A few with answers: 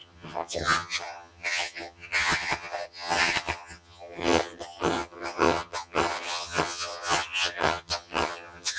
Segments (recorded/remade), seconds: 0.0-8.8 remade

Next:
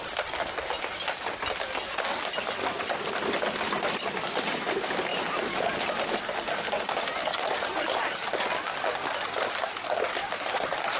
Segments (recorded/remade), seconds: 0.0-11.0 recorded

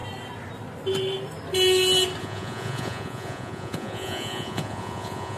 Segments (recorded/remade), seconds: 0.0-2.2 recorded; 2.2-5.4 remade